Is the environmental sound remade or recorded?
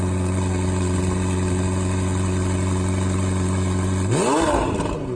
recorded